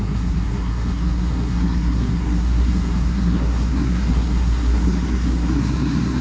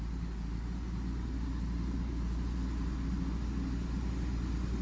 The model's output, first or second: first